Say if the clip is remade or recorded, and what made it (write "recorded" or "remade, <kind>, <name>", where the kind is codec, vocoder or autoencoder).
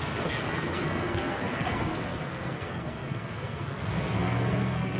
remade, codec, SNAC